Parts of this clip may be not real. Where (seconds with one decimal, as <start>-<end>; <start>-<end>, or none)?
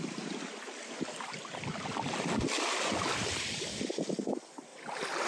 none